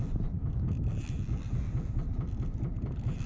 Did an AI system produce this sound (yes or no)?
no